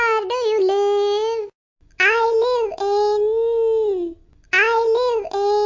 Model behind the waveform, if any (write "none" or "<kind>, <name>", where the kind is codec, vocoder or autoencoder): none